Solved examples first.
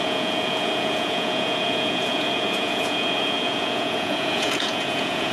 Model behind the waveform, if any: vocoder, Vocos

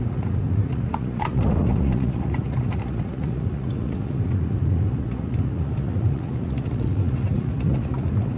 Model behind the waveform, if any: vocoder, Vocos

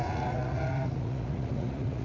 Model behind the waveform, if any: vocoder, Vocos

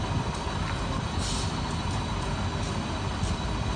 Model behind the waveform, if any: none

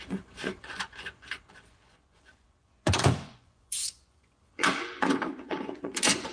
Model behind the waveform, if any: vocoder, Vocos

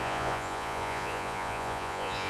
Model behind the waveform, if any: vocoder, Vocos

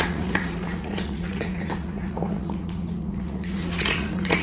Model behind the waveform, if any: vocoder, Vocos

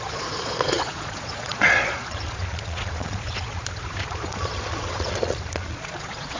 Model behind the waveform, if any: vocoder, Vocos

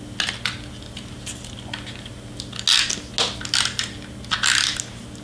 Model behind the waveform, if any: none